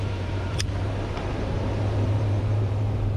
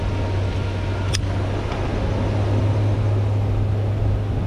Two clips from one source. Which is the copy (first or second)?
first